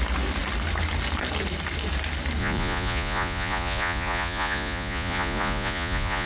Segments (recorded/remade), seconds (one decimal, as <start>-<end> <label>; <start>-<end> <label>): 0.0-2.4 recorded; 2.4-6.3 remade